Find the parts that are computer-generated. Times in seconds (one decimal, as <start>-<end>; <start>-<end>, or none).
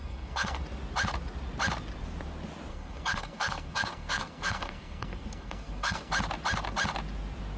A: 0.0-0.6; 2.7-6.1